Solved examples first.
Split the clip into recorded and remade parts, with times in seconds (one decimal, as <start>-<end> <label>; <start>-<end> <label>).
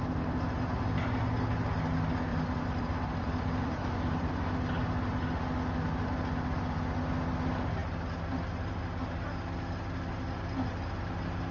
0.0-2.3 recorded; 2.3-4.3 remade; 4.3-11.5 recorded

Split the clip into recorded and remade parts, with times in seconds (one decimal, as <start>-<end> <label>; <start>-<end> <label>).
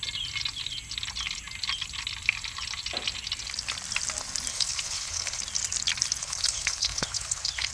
0.0-4.5 recorded; 4.5-5.4 remade; 5.4-6.2 recorded; 6.2-7.7 remade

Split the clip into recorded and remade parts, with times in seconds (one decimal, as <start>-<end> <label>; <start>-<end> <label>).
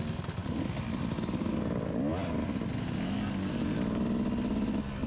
0.0-5.1 recorded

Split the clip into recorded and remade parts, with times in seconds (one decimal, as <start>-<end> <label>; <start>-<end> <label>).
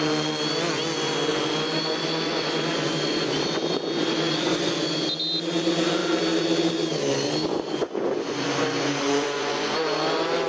0.0-1.3 recorded; 1.3-4.7 remade; 4.7-7.5 recorded; 7.5-10.5 remade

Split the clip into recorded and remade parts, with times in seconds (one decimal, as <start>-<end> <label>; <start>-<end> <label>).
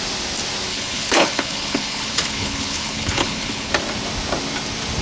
0.0-0.7 recorded; 0.7-3.7 remade; 3.7-5.0 recorded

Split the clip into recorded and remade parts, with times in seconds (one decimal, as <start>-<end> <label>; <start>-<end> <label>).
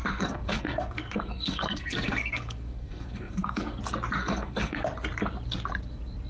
0.0-3.8 remade; 3.8-4.2 recorded; 4.2-4.8 remade; 4.8-6.3 recorded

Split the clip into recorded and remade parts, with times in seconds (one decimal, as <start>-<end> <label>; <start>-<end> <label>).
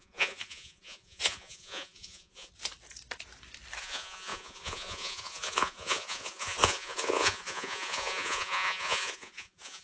0.0-2.5 remade; 2.5-3.8 recorded; 3.8-9.8 remade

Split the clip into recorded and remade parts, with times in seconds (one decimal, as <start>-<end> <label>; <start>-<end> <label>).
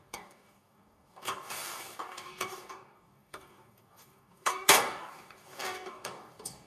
0.0-6.7 remade